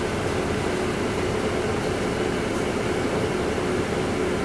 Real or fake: real